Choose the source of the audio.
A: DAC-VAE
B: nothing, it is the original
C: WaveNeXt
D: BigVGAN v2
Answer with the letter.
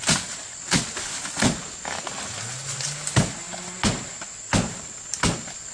B